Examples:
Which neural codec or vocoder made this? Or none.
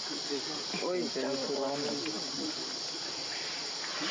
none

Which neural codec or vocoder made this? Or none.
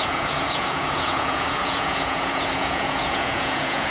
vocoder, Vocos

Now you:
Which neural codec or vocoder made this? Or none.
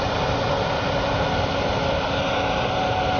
none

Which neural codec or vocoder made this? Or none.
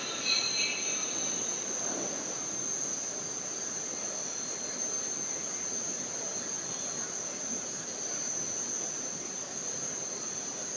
none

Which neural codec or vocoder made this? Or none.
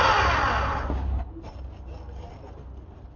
none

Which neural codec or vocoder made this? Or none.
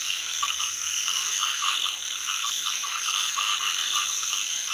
codec, SNAC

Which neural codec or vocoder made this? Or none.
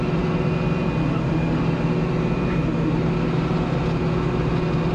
none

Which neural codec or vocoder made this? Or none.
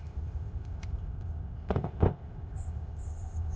codec, ZipCodec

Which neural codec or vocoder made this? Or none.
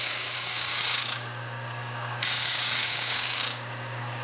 codec, DAC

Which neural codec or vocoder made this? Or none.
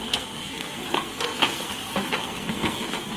codec, SNAC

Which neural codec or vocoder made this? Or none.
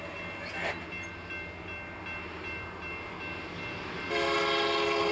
none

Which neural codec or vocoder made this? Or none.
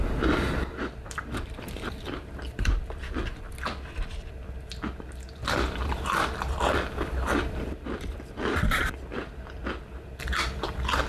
vocoder, BigVGAN v2